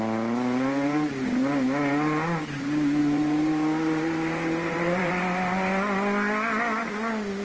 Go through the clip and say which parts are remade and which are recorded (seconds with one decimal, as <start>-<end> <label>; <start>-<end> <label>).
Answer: 0.0-3.0 recorded; 3.0-5.1 remade; 5.1-7.4 recorded